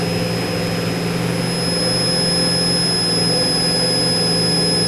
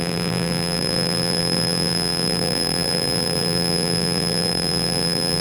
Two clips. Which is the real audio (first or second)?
first